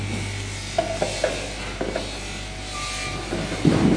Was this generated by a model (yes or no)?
no